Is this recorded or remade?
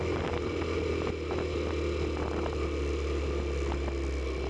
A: recorded